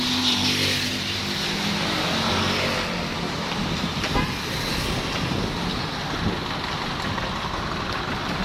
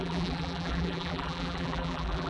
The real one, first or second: first